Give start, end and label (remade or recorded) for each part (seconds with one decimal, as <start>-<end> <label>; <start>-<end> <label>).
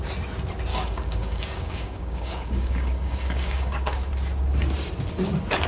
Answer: 0.0-0.7 recorded; 0.7-4.1 remade; 4.1-5.7 recorded